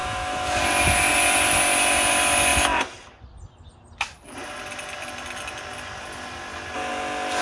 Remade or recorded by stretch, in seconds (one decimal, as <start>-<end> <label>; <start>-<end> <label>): 0.0-0.6 remade; 0.6-7.4 recorded